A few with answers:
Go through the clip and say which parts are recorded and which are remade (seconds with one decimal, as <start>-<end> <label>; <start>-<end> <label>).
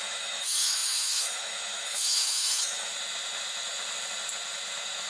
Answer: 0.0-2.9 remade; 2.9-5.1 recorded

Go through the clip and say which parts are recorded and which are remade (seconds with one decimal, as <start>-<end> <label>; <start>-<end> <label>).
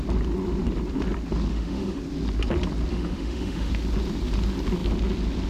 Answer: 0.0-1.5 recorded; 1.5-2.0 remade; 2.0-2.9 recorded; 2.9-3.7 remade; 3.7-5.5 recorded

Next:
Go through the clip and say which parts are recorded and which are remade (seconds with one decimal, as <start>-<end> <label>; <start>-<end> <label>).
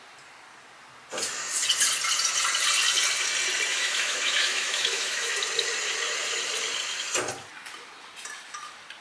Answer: 0.0-3.7 recorded; 3.7-5.3 remade; 5.3-9.0 recorded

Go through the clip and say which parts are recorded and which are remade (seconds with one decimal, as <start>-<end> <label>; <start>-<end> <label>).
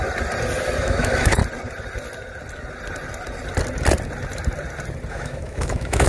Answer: 0.0-0.8 recorded; 0.8-1.4 remade; 1.4-5.1 recorded; 5.1-6.1 remade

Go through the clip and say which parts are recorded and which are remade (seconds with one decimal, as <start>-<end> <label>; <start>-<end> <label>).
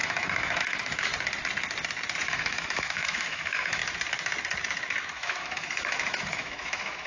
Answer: 0.0-1.1 remade; 1.1-2.3 recorded; 2.3-3.8 remade; 3.8-5.0 recorded; 5.0-7.1 remade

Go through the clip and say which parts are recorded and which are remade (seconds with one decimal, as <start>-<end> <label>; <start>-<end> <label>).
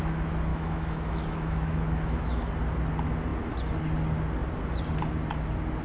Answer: 0.0-0.5 recorded; 0.5-2.5 remade; 2.5-5.8 recorded